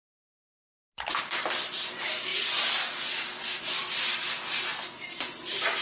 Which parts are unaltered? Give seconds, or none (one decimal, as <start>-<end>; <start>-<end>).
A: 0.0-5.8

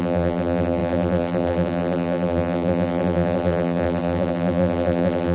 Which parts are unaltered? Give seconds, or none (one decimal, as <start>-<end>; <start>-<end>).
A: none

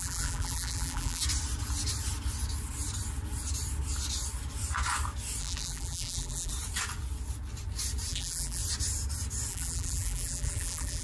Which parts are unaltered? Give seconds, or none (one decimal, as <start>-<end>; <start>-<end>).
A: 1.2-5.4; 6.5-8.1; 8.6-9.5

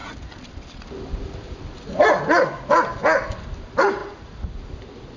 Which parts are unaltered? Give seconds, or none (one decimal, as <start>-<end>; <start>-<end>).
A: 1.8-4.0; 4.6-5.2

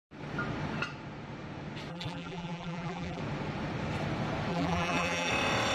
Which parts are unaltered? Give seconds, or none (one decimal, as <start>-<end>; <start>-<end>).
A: 0.0-1.9; 3.2-4.5; 5.3-5.7